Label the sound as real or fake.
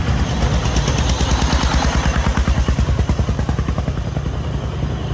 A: real